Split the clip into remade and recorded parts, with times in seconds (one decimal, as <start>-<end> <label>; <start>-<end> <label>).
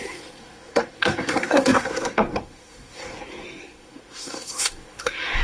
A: 0.0-5.4 remade